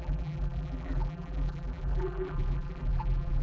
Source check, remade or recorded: remade